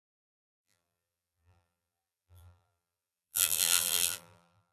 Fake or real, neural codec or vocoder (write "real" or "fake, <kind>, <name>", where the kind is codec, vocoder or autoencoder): fake, vocoder, BigVGAN v2